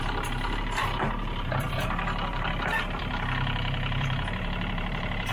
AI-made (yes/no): yes